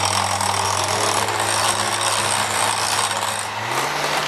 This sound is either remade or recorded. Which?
recorded